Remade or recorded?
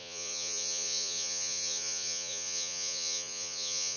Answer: remade